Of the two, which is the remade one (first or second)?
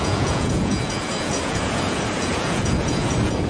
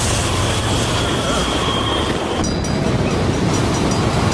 first